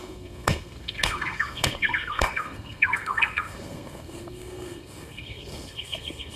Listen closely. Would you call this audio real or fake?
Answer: fake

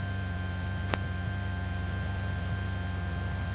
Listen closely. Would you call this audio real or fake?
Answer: real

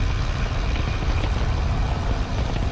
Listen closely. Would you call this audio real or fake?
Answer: real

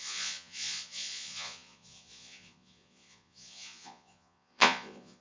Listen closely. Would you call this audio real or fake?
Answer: fake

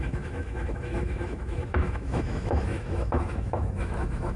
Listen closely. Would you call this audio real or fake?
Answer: fake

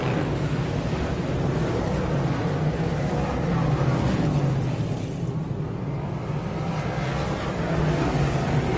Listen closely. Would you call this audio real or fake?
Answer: real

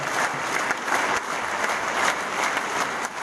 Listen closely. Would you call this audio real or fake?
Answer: real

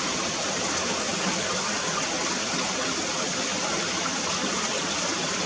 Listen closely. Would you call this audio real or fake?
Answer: real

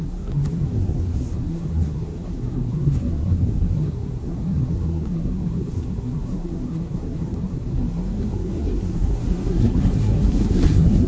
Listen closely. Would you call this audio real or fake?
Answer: fake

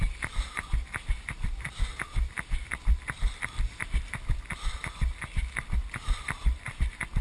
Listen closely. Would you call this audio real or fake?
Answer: real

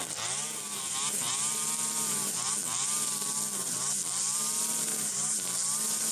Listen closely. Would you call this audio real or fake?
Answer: real